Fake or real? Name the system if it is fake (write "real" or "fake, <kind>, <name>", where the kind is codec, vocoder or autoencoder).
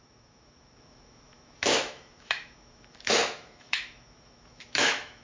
fake, autoencoder, DAC-VAE